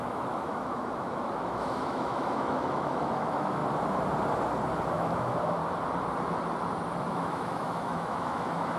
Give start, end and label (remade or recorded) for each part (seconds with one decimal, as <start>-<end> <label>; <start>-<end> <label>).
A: 0.0-3.6 remade; 3.6-4.9 recorded; 4.9-5.6 remade; 5.6-7.1 recorded; 7.1-8.8 remade